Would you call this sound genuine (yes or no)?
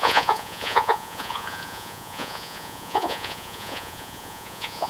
no